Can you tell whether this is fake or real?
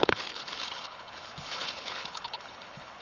fake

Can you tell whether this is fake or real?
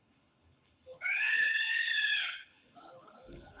fake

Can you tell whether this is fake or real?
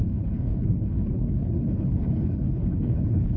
fake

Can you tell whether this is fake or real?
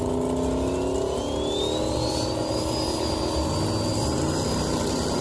real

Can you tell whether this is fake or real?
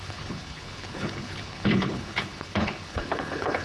fake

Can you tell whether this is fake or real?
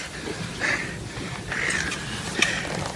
real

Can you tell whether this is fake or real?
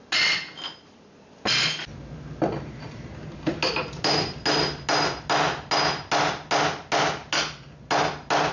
real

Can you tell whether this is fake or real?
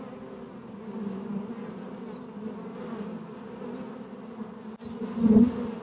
real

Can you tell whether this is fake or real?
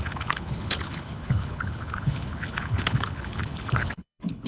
fake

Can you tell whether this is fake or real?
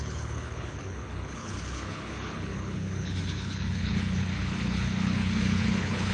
fake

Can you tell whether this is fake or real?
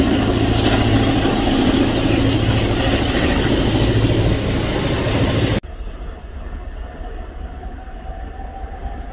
real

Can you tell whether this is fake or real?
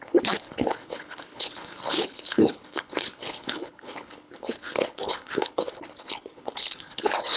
fake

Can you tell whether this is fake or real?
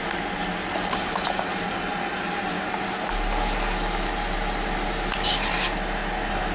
real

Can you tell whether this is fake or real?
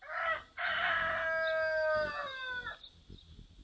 real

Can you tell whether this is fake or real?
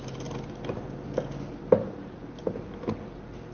real